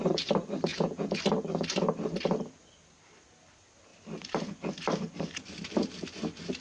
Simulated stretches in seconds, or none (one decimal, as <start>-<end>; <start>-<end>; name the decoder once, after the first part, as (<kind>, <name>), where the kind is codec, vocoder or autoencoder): 0.7-1.2 (vocoder, Vocos)